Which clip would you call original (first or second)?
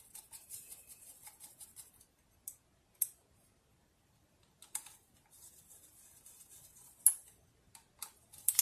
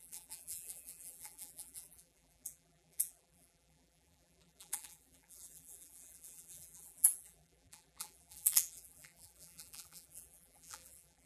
first